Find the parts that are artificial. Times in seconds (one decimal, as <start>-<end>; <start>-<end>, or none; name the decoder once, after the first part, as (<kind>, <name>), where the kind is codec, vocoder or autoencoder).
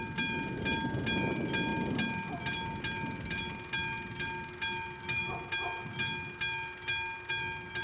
none